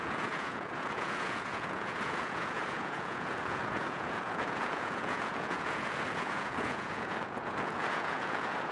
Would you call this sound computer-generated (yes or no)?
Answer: yes